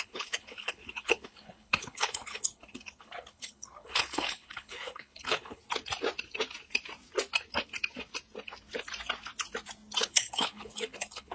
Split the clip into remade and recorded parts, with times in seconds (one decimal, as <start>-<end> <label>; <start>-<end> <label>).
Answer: 0.0-5.6 remade; 5.6-10.0 recorded; 10.0-11.3 remade